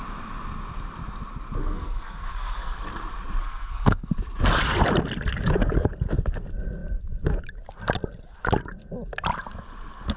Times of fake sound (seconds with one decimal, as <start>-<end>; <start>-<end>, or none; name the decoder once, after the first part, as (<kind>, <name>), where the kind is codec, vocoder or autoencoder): 1.6-2.8 (codec, SNAC); 3.4-4.1